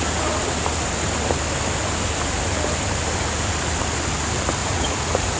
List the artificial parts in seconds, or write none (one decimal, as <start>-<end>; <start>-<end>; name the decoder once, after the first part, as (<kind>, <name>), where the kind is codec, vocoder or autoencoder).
4.6-5.4 (vocoder, Vocos)